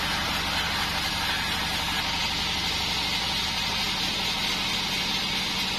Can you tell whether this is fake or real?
real